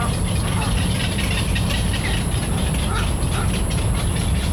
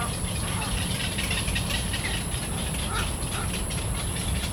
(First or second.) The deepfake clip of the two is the second